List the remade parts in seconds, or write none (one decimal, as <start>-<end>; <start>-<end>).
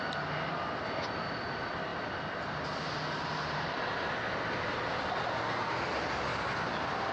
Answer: none